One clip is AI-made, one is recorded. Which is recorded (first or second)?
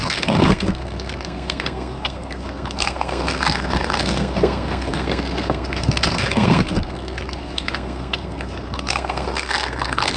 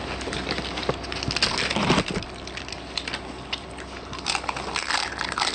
second